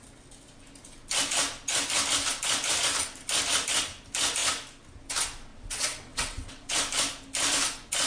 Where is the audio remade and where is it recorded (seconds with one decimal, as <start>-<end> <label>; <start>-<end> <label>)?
0.0-5.5 recorded; 5.5-6.7 remade; 6.7-8.1 recorded